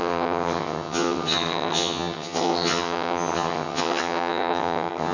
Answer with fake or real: fake